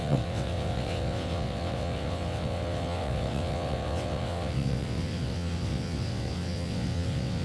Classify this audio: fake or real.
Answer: fake